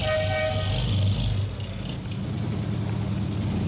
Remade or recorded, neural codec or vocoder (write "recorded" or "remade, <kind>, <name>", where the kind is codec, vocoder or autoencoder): recorded